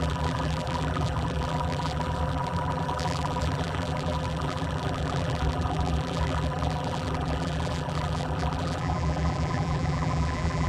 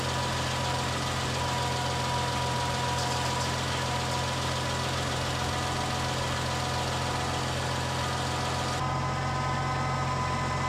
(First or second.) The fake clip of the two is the first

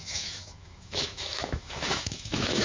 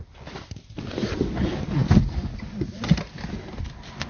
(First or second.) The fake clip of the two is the first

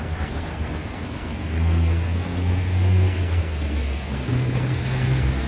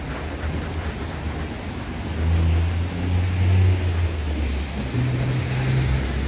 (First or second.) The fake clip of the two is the first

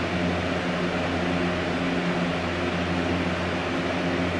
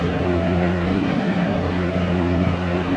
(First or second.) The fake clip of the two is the second